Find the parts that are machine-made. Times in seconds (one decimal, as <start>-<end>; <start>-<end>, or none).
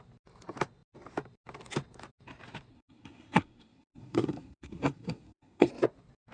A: 2.7-5.7